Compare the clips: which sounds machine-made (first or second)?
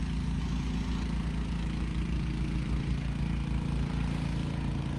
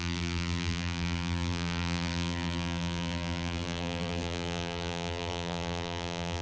second